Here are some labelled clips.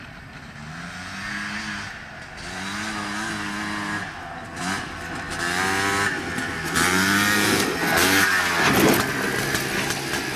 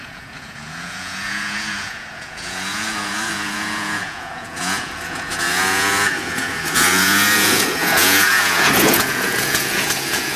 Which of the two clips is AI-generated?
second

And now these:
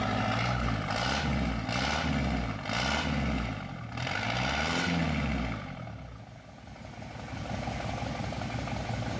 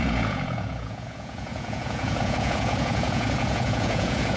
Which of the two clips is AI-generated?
second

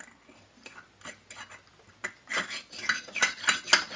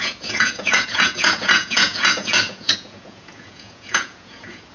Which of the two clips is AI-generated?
second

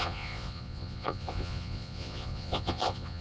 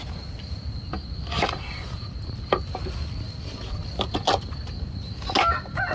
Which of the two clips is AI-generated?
first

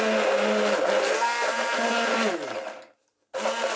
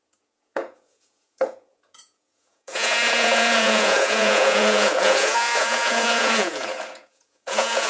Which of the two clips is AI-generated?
second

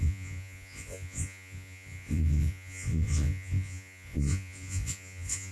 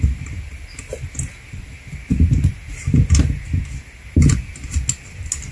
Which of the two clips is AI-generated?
first